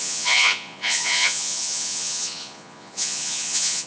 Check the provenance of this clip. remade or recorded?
remade